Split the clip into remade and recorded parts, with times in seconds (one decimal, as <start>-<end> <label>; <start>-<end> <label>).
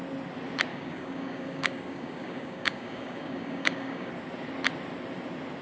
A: 0.0-0.7 recorded; 0.7-4.1 remade; 4.1-5.6 recorded